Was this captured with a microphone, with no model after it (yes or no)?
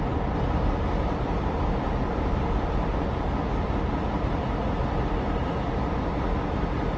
yes